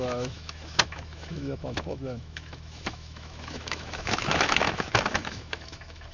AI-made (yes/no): yes